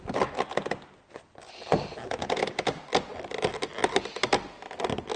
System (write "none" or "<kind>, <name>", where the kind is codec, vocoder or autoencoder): none